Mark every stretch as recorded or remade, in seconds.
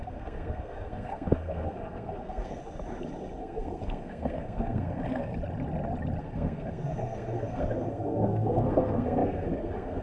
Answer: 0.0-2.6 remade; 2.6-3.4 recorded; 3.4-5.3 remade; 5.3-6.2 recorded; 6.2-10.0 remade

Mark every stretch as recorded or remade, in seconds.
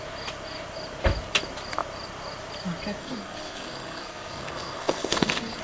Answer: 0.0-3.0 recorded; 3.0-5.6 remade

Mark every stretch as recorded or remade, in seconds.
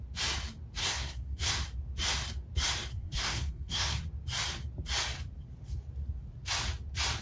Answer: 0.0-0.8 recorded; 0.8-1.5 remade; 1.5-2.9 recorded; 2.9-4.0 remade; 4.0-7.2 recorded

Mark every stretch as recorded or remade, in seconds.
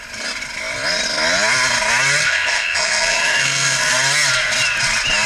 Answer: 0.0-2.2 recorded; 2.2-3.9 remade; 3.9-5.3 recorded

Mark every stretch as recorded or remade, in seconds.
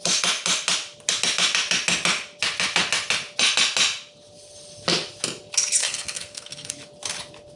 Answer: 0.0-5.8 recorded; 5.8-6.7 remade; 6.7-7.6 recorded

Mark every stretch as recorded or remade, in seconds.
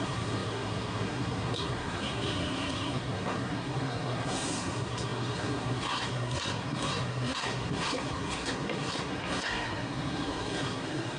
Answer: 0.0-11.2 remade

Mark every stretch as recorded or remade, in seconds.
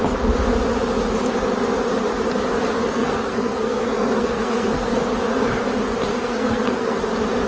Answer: 0.0-2.9 recorded; 2.9-5.0 remade; 5.0-6.1 recorded; 6.1-7.0 remade; 7.0-7.5 recorded